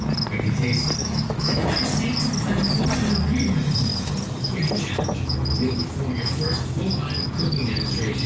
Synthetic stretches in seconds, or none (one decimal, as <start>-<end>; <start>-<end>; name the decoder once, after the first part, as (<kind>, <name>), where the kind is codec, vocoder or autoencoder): 1.0-1.6 (autoencoder, DAC-VAE)